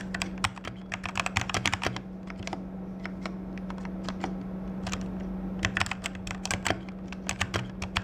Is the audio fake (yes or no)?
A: no